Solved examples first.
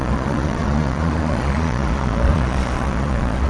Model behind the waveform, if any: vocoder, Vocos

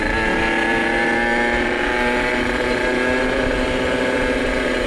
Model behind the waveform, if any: none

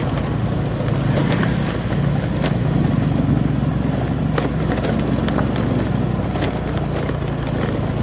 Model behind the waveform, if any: none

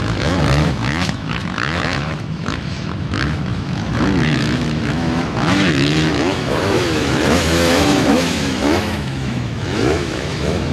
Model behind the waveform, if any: autoencoder, DAC-VAE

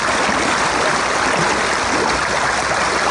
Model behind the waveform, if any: none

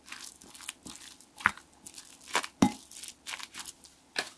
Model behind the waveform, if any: none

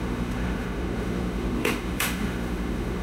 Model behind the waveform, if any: autoencoder, DAC-VAE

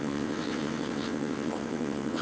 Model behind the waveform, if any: vocoder, WaveNeXt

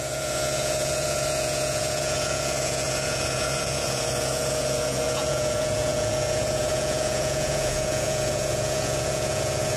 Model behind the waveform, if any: vocoder, Vocos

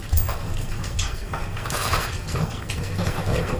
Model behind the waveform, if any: codec, SNAC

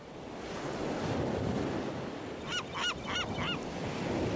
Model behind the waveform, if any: none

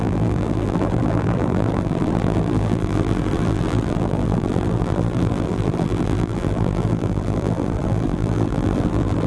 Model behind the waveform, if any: vocoder, BigVGAN v2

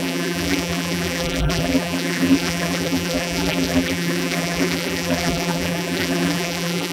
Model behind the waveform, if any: vocoder, BigVGAN v2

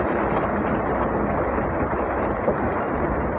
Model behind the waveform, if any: vocoder, BigVGAN v2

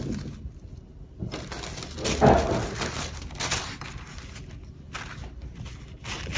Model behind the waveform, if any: none